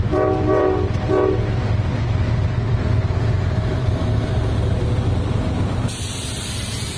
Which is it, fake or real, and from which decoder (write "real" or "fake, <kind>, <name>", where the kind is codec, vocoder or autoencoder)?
fake, vocoder, BigVGAN v2